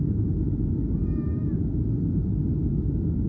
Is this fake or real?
real